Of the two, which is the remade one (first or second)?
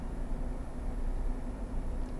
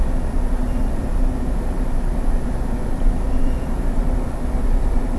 second